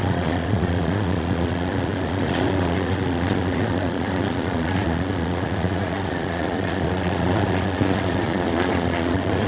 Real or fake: fake